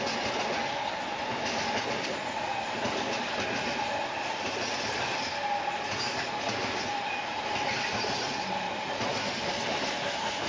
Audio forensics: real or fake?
real